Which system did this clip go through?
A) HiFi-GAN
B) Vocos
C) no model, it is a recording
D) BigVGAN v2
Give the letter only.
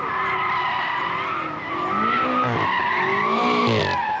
C